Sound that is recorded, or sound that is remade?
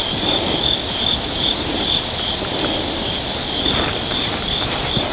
recorded